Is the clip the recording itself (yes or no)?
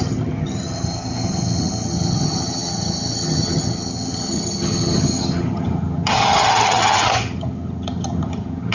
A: no